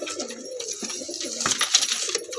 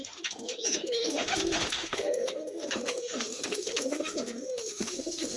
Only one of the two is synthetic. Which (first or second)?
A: second